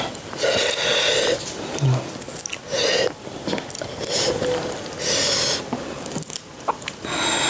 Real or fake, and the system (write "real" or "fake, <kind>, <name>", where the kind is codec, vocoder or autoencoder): real